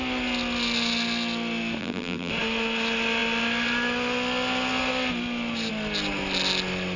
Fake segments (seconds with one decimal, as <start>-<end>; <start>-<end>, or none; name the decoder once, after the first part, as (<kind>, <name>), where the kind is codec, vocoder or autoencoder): 1.8-2.3 (vocoder, BigVGAN v2)